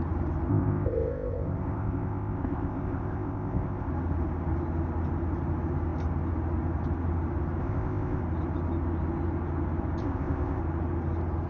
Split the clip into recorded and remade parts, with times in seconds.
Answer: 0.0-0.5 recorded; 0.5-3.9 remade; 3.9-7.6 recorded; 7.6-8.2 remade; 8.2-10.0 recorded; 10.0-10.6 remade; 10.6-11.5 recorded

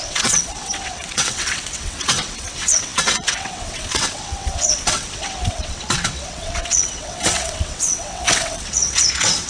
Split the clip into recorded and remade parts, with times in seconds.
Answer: 0.0-9.5 remade

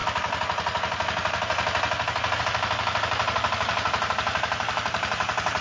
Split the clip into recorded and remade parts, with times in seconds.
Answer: 0.0-2.4 recorded; 2.4-5.6 remade

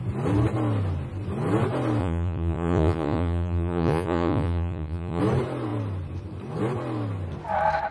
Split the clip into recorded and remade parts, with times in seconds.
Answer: 0.0-2.0 recorded; 2.0-5.2 remade; 5.2-7.9 recorded

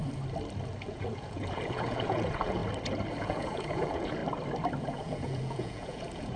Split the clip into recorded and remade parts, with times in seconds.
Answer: 0.0-0.8 recorded; 0.8-2.6 remade; 2.6-3.2 recorded; 3.2-4.2 remade; 4.2-4.8 recorded; 4.8-6.4 remade

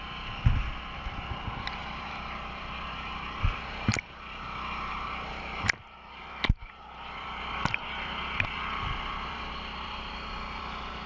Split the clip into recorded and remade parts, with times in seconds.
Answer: 0.0-0.9 recorded; 0.9-11.1 remade